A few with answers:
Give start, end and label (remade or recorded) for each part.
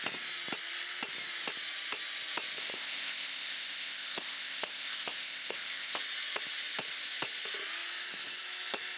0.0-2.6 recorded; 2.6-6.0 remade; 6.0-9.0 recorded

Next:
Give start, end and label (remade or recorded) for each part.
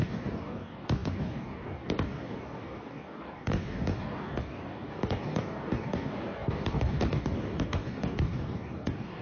0.0-9.2 remade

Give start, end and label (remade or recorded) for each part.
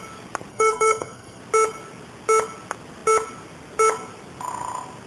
0.0-0.5 recorded; 0.5-1.4 remade; 1.4-5.1 recorded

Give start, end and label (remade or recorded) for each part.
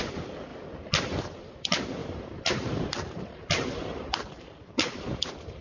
0.0-2.0 recorded; 2.0-5.0 remade; 5.0-5.6 recorded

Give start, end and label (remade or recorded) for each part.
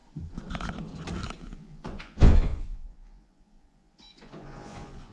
0.0-1.4 recorded; 1.4-5.1 remade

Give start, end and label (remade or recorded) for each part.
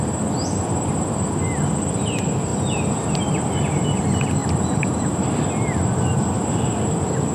0.0-7.3 recorded